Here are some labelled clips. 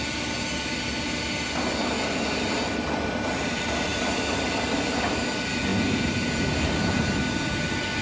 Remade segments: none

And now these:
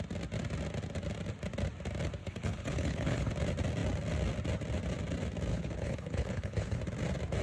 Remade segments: 2.2-3.3; 5.5-6.8

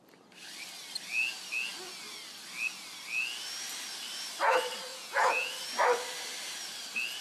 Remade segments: 4.9-5.5

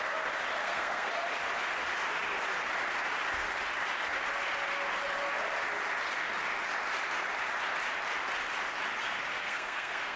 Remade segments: 0.6-1.1; 9.3-10.2

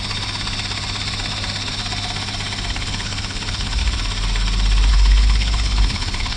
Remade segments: 2.7-3.8; 4.9-6.4

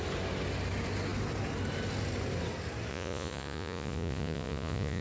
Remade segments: 2.9-5.0

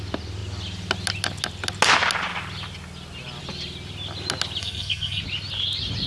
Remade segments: 4.6-5.2